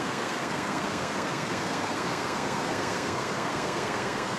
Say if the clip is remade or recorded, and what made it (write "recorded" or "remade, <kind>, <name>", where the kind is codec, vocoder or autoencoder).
remade, codec, SNAC